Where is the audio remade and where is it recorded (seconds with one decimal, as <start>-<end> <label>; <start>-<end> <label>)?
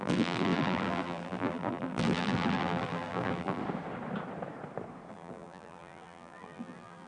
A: 0.0-3.6 remade; 3.6-5.1 recorded; 5.1-7.1 remade